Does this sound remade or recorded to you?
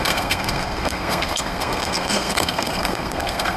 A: remade